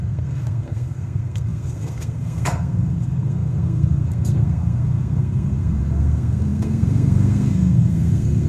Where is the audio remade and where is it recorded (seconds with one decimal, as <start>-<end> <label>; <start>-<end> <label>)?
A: 0.0-8.5 remade